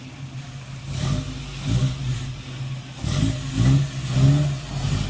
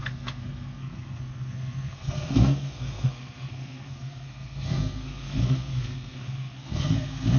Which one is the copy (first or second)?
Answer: second